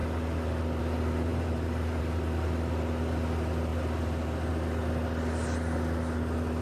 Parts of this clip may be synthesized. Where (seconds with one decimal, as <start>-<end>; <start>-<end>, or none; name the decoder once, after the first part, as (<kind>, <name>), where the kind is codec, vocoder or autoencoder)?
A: 1.3-2.0 (vocoder, BigVGAN v2)